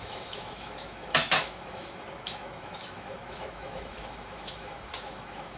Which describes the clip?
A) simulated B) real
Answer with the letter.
A